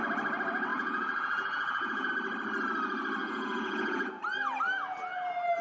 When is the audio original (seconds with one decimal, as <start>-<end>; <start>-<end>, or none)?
0.0-0.7; 2.1-3.2; 4.2-5.6